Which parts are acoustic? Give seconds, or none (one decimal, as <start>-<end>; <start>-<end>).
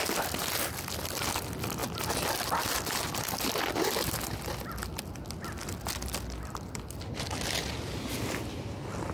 0.0-9.1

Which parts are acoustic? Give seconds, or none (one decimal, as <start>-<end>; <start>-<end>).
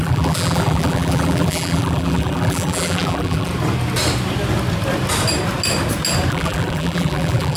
3.5-6.3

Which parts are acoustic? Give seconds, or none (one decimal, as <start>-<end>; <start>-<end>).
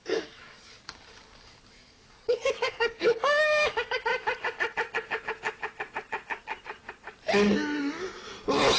4.1-8.8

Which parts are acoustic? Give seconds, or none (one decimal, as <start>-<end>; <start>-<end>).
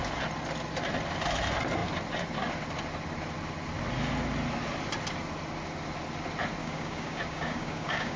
0.0-6.6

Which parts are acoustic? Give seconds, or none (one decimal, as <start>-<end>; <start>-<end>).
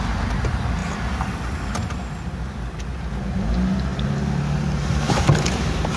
0.0-6.0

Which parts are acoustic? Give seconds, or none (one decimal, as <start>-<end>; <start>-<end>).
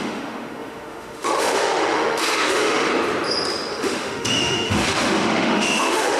2.9-3.7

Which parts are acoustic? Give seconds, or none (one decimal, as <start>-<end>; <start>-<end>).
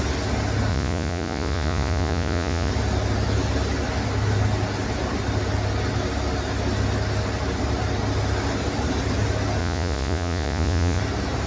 0.0-0.7; 2.7-9.6; 11.0-11.5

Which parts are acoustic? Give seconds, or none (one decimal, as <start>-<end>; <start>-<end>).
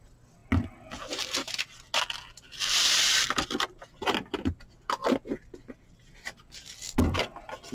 0.0-7.7